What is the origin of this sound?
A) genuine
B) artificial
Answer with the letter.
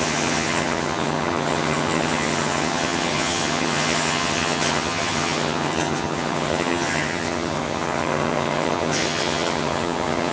B